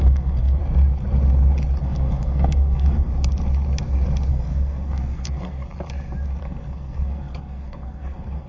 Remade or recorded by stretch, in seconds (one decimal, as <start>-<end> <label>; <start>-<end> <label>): 0.0-0.6 remade; 0.6-1.8 recorded; 1.8-3.1 remade; 3.1-4.3 recorded; 4.3-5.7 remade; 5.7-6.4 recorded; 6.4-8.5 remade